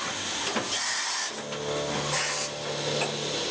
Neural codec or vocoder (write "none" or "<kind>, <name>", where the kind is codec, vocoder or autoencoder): none